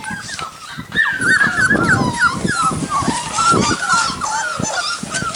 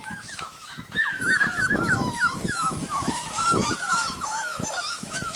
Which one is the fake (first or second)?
second